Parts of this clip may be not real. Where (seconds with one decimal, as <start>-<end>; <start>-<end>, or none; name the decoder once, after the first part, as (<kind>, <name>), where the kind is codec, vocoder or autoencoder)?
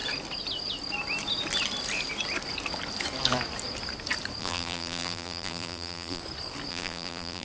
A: 4.4-6.2 (vocoder, BigVGAN v2); 6.7-7.4